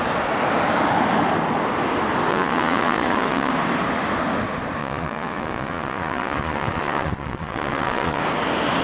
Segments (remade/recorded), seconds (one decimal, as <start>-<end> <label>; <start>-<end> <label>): 0.0-2.3 recorded; 2.3-3.5 remade; 3.5-4.8 recorded; 4.8-8.2 remade; 8.2-8.8 recorded